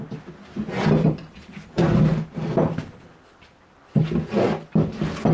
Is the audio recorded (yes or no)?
yes